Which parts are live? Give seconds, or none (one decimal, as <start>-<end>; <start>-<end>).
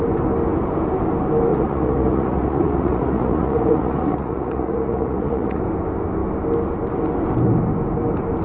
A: 0.0-1.5; 5.6-8.4